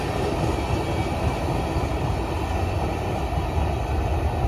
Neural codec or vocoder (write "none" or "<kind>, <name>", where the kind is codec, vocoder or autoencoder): none